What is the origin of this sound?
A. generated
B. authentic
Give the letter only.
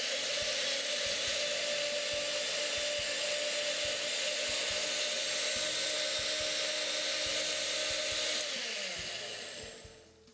B